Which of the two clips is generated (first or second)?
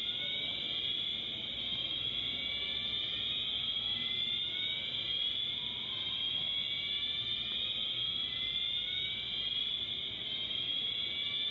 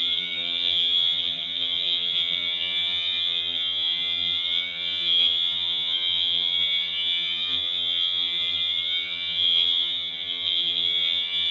second